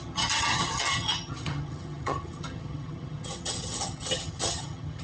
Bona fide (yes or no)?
no